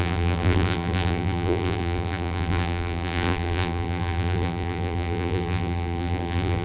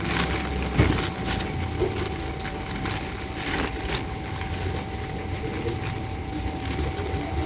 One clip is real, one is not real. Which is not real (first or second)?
first